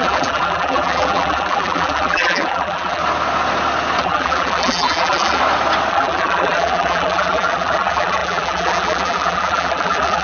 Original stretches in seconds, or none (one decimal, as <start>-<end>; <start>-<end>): 3.0-4.0; 5.4-5.9